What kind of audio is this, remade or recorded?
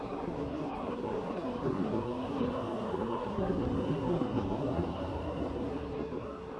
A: remade